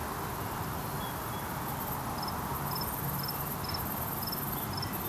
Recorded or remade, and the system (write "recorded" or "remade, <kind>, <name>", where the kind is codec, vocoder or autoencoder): recorded